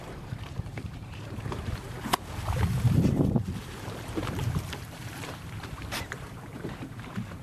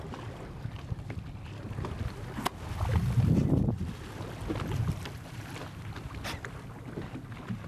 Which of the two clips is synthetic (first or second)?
first